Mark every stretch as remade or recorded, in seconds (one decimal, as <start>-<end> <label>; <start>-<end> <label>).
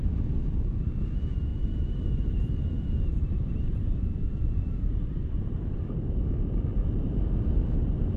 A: 0.0-1.5 recorded; 1.5-6.3 remade; 6.3-8.2 recorded